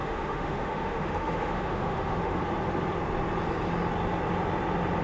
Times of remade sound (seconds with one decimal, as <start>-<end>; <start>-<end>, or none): 0.0-2.4